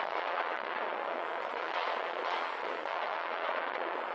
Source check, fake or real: fake